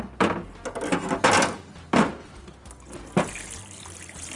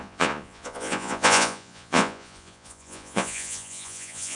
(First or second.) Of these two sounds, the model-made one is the second